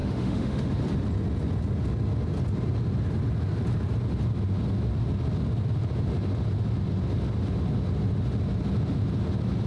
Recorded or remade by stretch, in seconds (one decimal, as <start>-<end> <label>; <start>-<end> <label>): 0.0-0.7 remade; 0.7-9.7 recorded